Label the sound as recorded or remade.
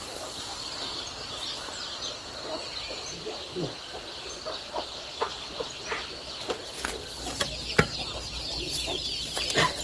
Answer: recorded